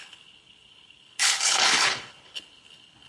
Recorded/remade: remade